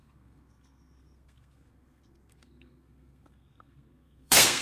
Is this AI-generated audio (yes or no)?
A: yes